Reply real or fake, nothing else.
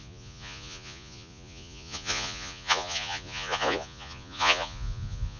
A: fake